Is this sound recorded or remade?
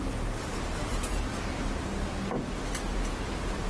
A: recorded